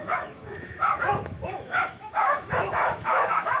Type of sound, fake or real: fake